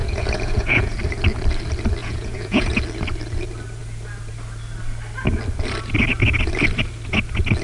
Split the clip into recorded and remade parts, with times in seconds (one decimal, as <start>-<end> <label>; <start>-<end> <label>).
0.0-1.0 remade; 1.0-2.0 recorded; 2.0-2.8 remade; 2.8-7.6 recorded